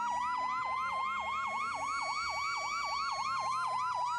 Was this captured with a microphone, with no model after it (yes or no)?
yes